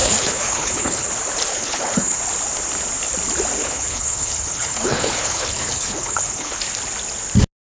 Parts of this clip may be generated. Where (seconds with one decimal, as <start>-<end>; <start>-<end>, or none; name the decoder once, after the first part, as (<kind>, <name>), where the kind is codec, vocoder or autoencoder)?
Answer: 0.0-1.1 (codec, HILCodec); 1.5-2.2; 3.6-6.6